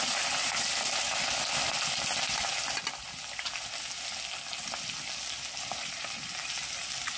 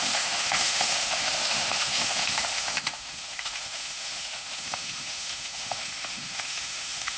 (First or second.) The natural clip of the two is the first